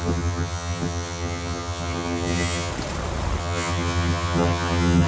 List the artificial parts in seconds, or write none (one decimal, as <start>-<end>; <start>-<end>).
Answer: 0.0-2.7; 3.4-5.1